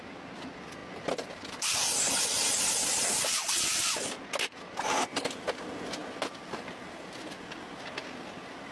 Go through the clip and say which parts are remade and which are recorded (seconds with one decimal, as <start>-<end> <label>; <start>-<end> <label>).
0.0-8.7 recorded

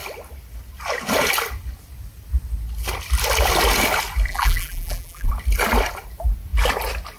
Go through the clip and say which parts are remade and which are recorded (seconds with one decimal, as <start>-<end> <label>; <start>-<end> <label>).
0.0-4.3 recorded; 4.3-5.3 remade; 5.3-7.2 recorded

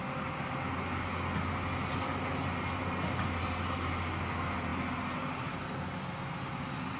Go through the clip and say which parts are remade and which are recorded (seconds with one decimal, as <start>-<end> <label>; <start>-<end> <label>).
0.0-7.0 recorded

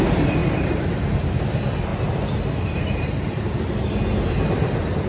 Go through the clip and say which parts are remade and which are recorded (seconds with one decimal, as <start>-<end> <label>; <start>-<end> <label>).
0.0-0.4 recorded; 0.4-1.4 remade; 1.4-1.9 recorded; 1.9-3.4 remade; 3.4-5.1 recorded

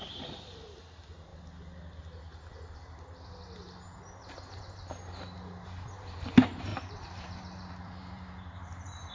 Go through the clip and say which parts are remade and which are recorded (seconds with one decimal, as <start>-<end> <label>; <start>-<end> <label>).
0.0-1.3 remade; 1.3-4.6 recorded; 4.6-9.1 remade

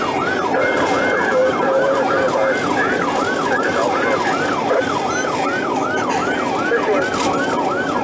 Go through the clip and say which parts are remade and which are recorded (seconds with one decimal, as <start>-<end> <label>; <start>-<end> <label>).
0.0-1.4 recorded; 1.4-2.3 remade; 2.3-8.0 recorded

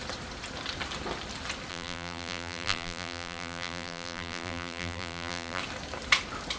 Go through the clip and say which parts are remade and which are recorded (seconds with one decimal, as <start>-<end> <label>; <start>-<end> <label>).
0.0-1.7 recorded; 1.7-5.6 remade; 5.6-6.6 recorded

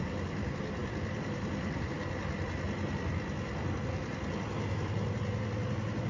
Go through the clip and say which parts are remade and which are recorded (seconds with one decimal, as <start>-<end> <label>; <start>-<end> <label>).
0.0-0.8 recorded; 0.8-4.1 remade; 4.1-6.1 recorded